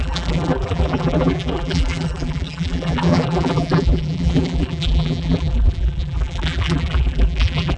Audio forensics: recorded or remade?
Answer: remade